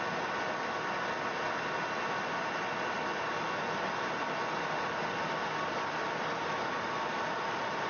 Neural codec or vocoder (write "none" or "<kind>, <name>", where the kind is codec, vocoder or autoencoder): none